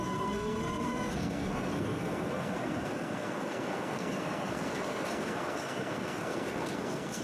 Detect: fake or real fake